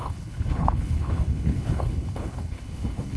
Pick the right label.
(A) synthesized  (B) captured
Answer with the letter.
A